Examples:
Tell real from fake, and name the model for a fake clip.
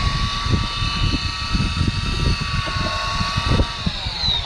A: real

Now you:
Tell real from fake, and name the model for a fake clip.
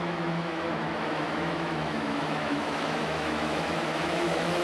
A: fake, autoencoder, DAC-VAE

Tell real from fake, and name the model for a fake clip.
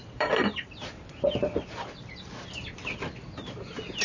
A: fake, vocoder, BigVGAN v2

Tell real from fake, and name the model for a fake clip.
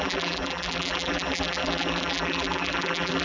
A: fake, vocoder, BigVGAN v2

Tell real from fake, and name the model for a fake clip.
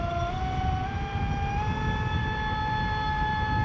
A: real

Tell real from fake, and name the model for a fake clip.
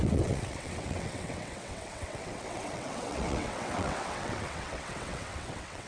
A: fake, vocoder, WaveNeXt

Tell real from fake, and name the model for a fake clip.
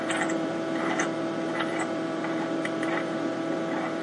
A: fake, vocoder, BigVGAN v2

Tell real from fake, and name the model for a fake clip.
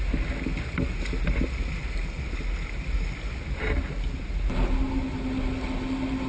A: real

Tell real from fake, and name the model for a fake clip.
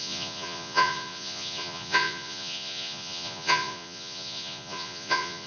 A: fake, vocoder, Vocos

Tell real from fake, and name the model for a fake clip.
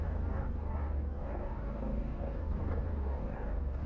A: fake, codec, DAC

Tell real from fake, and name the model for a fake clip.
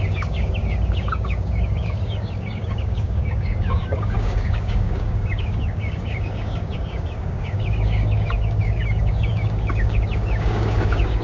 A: fake, codec, DAC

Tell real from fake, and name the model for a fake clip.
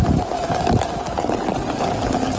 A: real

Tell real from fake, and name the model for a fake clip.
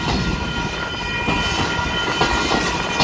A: real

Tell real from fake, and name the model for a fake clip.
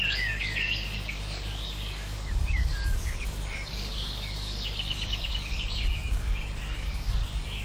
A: fake, codec, DAC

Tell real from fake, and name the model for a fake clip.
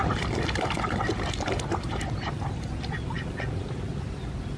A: fake, vocoder, BigVGAN v2